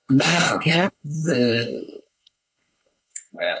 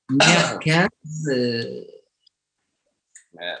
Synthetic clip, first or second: first